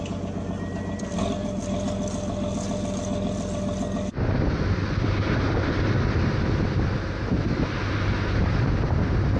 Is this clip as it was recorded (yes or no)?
yes